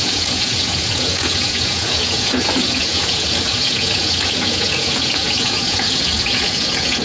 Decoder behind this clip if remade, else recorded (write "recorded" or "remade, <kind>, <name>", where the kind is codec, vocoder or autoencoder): remade, vocoder, Vocos